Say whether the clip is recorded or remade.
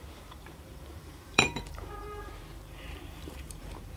remade